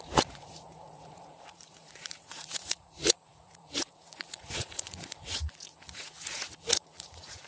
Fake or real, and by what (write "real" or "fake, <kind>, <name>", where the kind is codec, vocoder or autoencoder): fake, vocoder, Vocos